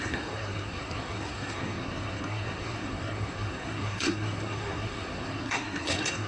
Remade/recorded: remade